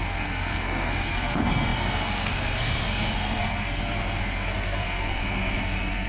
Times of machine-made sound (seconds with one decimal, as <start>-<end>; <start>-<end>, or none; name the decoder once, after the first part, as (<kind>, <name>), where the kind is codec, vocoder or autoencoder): 0.0-6.1 (codec, SNAC)